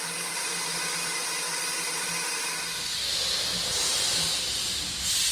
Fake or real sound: real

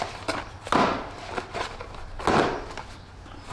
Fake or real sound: real